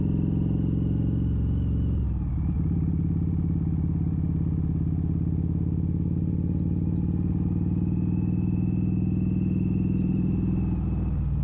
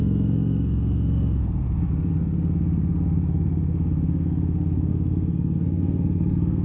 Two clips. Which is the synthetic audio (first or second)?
second